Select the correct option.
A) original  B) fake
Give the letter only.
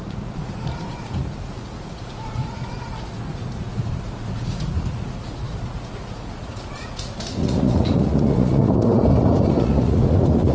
B